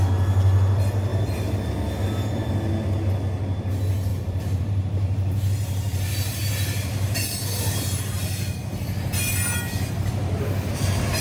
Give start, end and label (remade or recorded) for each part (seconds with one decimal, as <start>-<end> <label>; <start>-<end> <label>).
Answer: 0.0-1.1 recorded; 1.1-1.7 remade; 1.7-4.1 recorded; 4.1-8.0 remade; 8.0-11.2 recorded